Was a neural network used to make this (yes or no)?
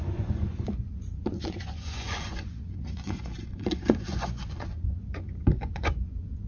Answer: yes